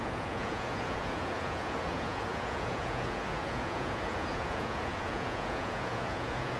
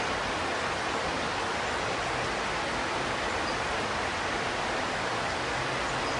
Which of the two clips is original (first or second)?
second